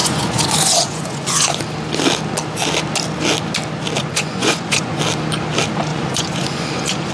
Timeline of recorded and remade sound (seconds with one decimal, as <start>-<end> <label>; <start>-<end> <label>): 0.0-1.6 remade; 1.6-4.0 recorded; 4.0-5.0 remade; 5.0-5.9 recorded; 5.9-7.1 remade